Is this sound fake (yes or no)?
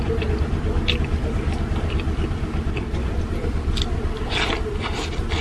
yes